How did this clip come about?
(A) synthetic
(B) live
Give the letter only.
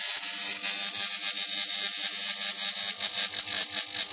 B